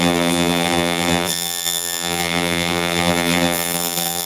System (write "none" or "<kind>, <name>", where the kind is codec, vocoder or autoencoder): vocoder, BigVGAN v2